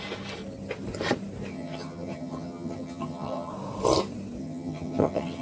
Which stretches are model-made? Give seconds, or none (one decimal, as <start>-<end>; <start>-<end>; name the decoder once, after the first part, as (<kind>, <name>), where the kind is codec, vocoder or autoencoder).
1.5-3.5 (vocoder, HiFi-GAN); 4.4-5.4